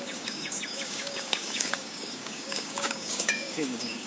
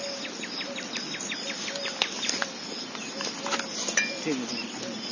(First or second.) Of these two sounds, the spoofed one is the first